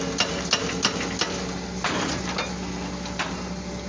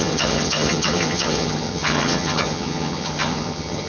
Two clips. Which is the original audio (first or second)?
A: first